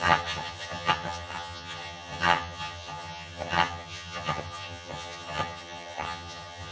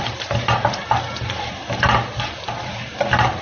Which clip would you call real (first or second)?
second